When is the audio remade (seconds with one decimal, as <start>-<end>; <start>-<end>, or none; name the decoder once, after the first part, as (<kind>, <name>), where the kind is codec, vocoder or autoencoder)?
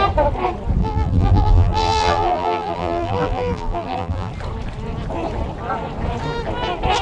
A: 0.8-4.3 (vocoder, BigVGAN v2)